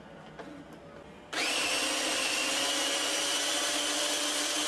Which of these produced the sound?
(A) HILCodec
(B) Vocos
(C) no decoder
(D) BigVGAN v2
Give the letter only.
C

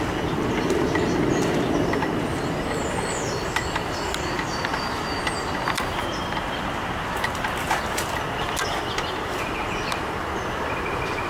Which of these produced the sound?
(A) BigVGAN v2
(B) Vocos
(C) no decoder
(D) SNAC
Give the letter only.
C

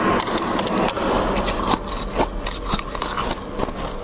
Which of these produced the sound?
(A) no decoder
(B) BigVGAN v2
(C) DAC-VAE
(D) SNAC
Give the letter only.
A